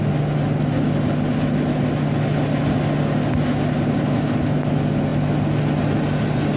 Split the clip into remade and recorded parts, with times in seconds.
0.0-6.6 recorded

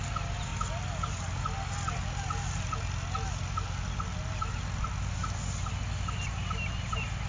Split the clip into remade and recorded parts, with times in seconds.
0.0-7.3 recorded

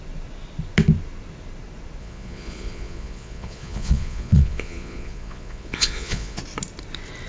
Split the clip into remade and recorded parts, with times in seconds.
0.0-2.0 recorded; 2.0-6.4 remade; 6.4-7.3 recorded

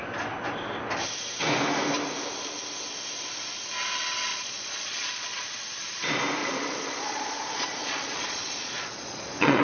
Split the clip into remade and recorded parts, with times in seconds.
0.0-4.3 recorded; 4.3-5.6 remade; 5.6-6.4 recorded; 6.4-9.6 remade

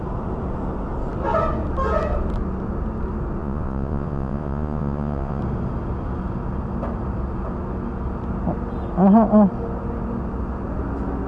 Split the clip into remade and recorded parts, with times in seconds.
0.0-3.4 recorded; 3.4-5.4 remade; 5.4-11.3 recorded

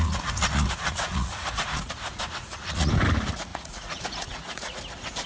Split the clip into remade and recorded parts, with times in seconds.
0.0-2.9 remade; 2.9-3.5 recorded; 3.5-4.8 remade; 4.8-5.3 recorded

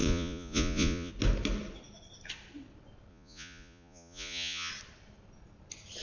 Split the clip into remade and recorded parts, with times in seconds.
0.0-1.1 remade; 1.1-3.1 recorded; 3.1-4.7 remade; 4.7-6.0 recorded

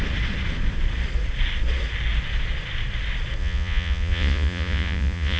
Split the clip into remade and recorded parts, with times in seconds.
0.0-3.4 recorded; 3.4-5.4 remade